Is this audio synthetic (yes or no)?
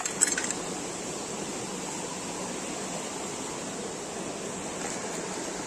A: no